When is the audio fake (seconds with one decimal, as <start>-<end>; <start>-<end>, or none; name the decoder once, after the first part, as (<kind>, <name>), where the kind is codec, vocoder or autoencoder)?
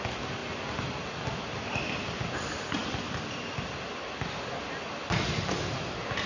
none